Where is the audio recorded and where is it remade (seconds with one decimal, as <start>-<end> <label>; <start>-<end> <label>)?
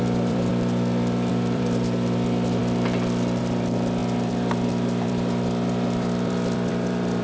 0.0-0.5 remade; 0.5-1.3 recorded; 1.3-2.6 remade; 2.6-3.4 recorded; 3.4-7.2 remade